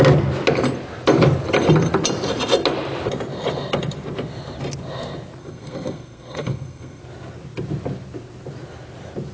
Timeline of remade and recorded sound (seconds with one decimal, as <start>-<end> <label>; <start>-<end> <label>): 0.0-5.4 recorded; 5.4-7.0 remade; 7.0-9.3 recorded